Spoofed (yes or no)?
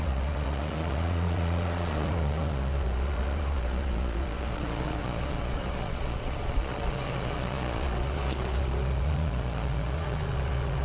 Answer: yes